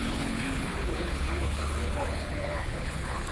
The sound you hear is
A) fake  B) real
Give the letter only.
A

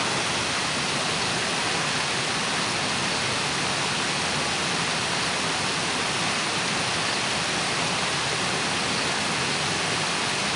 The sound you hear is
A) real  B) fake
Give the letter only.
A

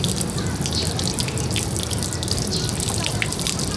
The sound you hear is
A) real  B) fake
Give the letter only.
A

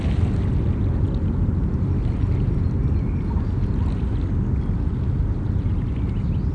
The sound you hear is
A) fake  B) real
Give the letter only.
B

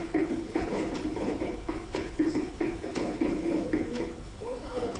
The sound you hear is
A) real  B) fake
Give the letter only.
B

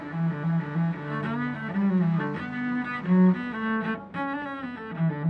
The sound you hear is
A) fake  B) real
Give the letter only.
B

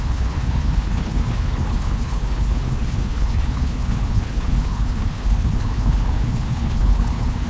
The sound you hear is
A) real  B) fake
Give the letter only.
B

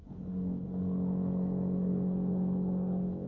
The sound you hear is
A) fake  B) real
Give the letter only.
A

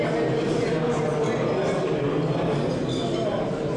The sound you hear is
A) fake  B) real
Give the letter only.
B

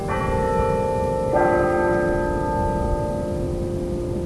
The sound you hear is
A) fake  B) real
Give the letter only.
B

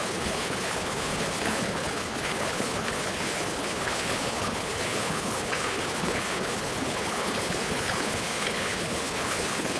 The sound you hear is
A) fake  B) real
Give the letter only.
A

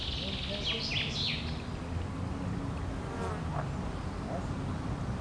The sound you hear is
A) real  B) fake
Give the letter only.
A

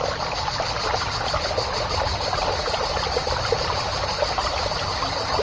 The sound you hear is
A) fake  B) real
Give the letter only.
B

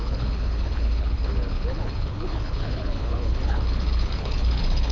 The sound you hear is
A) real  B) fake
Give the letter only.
B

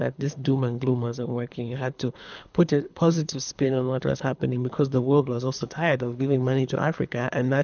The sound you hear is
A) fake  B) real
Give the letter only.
A